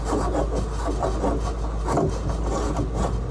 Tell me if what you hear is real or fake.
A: real